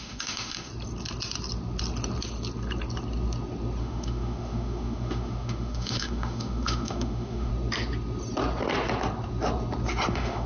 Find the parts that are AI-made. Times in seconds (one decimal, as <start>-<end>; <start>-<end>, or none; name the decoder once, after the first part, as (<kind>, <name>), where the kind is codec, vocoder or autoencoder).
0.0-0.7 (autoencoder, DAC-VAE); 3.8-7.5; 10.1-10.5